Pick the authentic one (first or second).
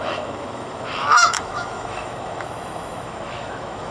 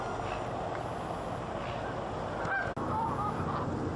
second